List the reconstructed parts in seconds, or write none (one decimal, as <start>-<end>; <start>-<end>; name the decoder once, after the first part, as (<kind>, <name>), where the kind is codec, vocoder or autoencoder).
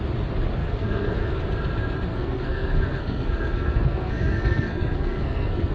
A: 0.6-1.4 (codec, SNAC); 2.1-5.7